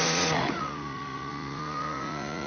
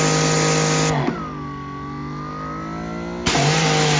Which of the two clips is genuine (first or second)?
second